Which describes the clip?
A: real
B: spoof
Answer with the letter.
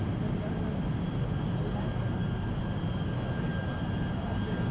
A